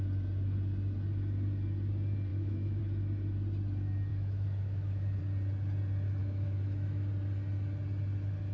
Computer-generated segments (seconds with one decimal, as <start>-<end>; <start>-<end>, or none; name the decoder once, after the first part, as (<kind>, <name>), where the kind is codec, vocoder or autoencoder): 2.3-2.8 (autoencoder, DAC-VAE); 4.1-5.2; 6.2-7.1